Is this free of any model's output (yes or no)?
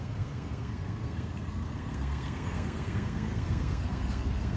no